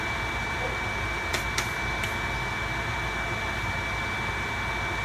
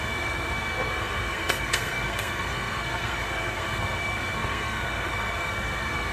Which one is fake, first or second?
second